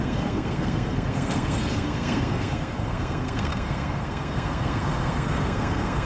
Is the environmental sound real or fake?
fake